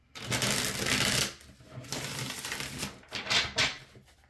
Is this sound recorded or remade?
recorded